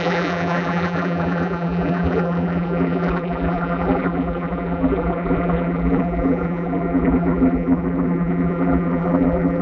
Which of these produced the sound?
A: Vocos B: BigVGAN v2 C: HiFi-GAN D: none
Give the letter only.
B